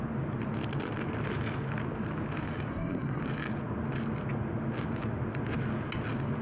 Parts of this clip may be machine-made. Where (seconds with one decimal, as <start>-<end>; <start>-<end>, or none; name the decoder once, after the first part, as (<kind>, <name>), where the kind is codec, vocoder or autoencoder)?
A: 2.7-3.2 (codec, SNAC)